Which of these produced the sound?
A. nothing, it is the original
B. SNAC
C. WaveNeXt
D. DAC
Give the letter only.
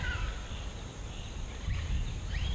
A